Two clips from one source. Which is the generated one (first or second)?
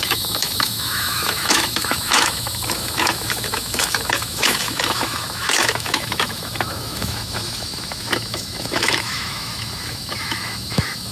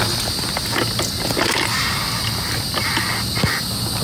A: first